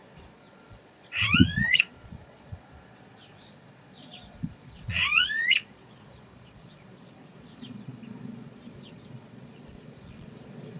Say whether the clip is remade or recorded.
remade